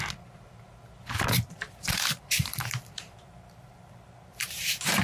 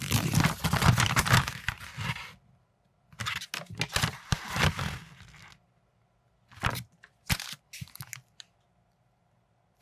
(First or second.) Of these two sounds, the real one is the second